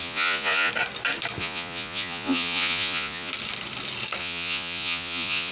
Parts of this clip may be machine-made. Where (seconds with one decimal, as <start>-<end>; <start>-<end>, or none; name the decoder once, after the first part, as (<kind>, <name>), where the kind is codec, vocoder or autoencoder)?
0.0-0.7 (vocoder, Vocos); 1.4-3.3; 4.2-5.5